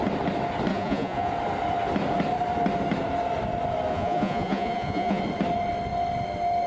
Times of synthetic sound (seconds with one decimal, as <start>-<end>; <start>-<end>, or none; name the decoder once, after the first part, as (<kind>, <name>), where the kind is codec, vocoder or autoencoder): 0.7-1.3 (vocoder, Vocos); 3.9-5.2

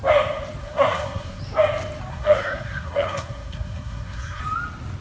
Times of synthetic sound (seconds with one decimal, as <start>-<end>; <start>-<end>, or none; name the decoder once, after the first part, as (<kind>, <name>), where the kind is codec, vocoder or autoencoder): 0.6-1.4 (codec, SNAC); 2.1-4.4

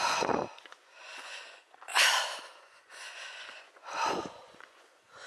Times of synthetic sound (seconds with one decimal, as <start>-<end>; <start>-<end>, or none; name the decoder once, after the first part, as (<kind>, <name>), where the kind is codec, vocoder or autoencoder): 0.0-1.9 (vocoder, Vocos); 2.5-5.3

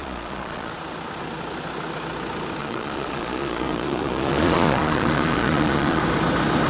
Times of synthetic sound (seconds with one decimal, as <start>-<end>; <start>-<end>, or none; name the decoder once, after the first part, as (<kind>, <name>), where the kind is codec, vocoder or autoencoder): 0.0-0.7 (vocoder, Vocos); 2.6-6.0

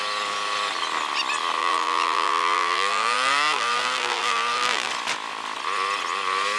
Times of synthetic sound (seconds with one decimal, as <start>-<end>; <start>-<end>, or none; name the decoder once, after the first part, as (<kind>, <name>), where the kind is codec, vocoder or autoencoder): 1.6-4.9 (vocoder, BigVGAN v2)